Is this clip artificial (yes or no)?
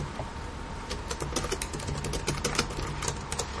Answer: no